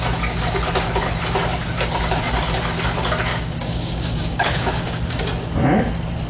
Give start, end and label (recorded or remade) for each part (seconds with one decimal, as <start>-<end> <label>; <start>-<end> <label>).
0.0-3.3 recorded; 3.3-5.2 remade; 5.2-6.3 recorded